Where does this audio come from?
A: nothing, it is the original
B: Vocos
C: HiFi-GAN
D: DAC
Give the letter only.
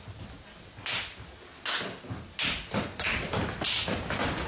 A